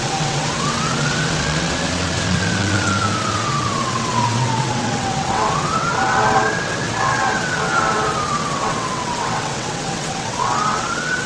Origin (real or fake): fake